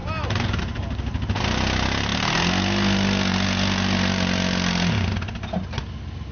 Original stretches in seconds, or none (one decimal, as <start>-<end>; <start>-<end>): 0.0-6.3

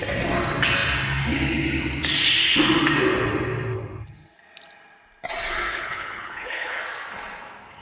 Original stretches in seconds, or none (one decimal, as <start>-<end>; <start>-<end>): 0.0-5.7; 6.8-7.8